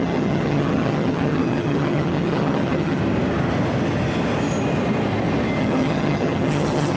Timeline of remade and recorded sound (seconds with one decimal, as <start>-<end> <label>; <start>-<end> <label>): 0.0-3.0 remade; 3.0-5.6 recorded; 5.6-7.0 remade